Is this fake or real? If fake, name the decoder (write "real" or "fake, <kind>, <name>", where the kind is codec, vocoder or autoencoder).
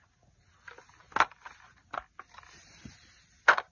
real